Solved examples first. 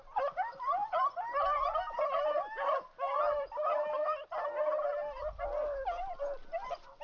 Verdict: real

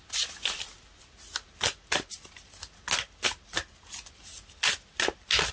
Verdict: real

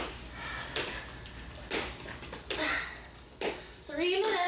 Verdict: real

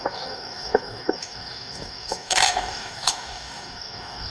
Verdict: fake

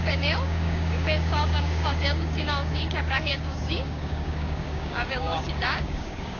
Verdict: fake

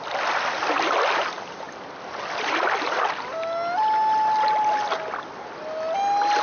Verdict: real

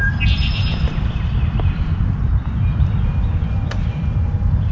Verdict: real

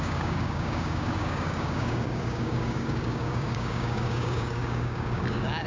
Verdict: fake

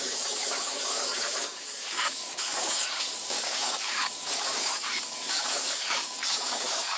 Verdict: fake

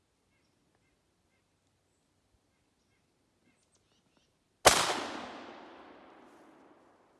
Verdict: real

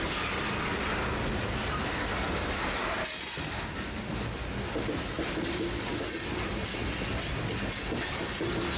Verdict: real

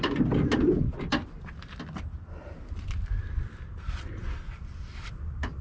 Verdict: real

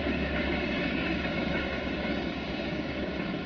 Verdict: fake